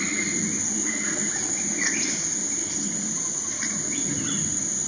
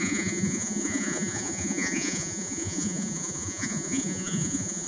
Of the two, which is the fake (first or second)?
second